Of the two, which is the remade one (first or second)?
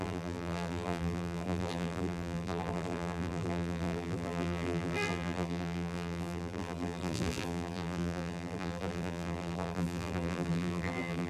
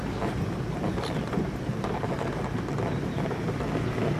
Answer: first